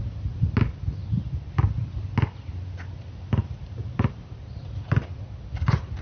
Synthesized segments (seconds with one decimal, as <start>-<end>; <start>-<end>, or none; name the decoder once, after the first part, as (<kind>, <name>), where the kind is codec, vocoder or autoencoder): 1.0-1.5 (vocoder, BigVGAN v2); 3.4-4.6